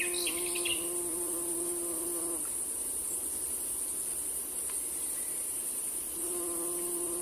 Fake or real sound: real